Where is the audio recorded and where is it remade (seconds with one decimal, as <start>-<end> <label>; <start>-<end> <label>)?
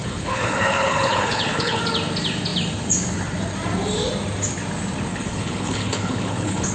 0.0-1.8 remade; 1.8-5.1 recorded; 5.1-6.7 remade